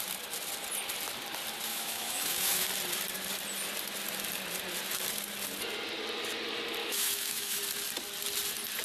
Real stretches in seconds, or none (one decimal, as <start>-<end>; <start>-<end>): 0.0-1.7; 2.7-6.8; 7.6-8.8